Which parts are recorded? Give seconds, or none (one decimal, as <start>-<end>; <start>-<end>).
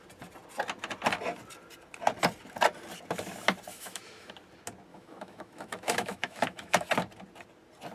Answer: 0.0-3.7; 4.3-4.9; 6.9-7.9